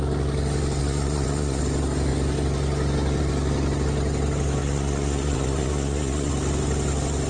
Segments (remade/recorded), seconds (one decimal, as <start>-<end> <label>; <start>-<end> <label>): 0.0-0.8 recorded; 0.8-1.6 remade; 1.6-4.6 recorded; 4.6-6.3 remade; 6.3-7.3 recorded